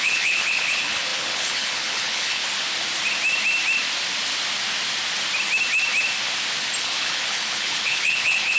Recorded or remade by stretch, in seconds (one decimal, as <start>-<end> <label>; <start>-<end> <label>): 0.0-2.4 remade; 2.4-6.8 recorded; 6.8-8.6 remade